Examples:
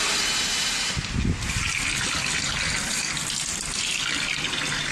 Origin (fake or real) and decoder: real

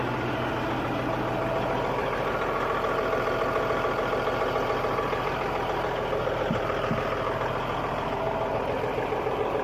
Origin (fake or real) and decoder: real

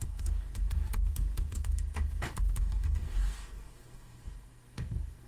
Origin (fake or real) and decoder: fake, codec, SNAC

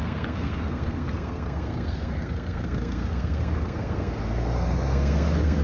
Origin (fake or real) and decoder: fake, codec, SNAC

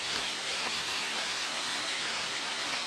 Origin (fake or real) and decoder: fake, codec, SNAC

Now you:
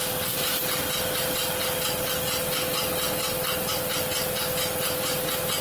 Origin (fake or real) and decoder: real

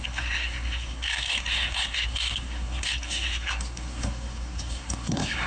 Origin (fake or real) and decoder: fake, codec, SNAC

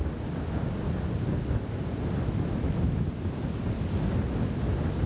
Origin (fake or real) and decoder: real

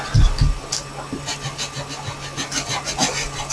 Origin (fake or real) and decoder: real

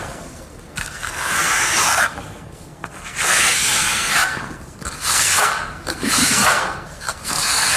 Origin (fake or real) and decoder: fake, codec, SNAC